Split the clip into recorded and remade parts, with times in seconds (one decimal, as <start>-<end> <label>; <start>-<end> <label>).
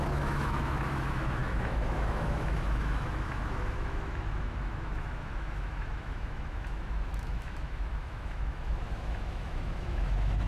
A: 0.0-10.5 remade